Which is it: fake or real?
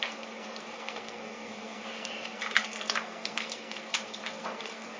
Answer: fake